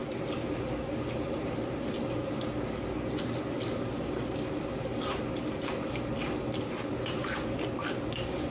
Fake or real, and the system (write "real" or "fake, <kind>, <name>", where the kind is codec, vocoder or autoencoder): real